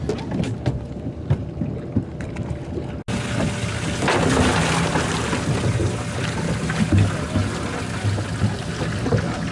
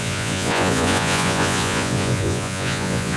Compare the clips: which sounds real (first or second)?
first